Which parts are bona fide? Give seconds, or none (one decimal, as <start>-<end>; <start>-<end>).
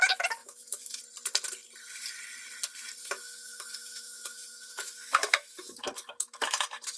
0.0-0.4; 1.0-3.0